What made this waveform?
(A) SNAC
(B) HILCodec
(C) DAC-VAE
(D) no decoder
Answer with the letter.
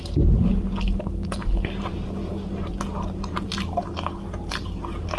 D